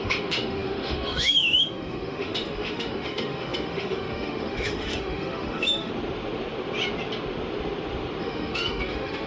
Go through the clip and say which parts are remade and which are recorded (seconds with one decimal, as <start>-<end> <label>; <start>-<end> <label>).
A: 0.0-5.9 remade; 5.9-8.2 recorded; 8.2-9.3 remade